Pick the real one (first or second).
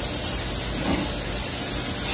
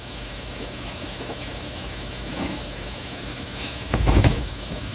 first